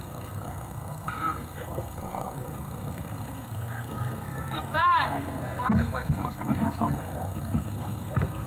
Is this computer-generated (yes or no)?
yes